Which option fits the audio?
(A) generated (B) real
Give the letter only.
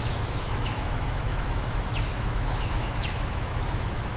A